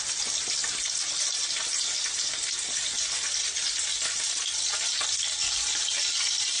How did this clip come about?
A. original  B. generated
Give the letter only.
A